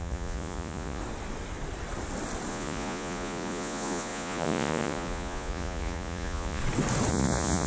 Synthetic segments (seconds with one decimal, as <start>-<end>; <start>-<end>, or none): 0.0-1.0; 2.5-6.6; 7.1-7.7